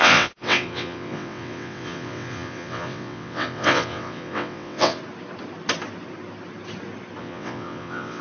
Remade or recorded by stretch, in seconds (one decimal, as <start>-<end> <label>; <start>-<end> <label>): 0.0-5.0 remade; 5.0-7.2 recorded; 7.2-8.2 remade